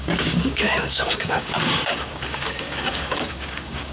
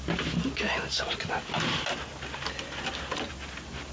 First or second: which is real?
second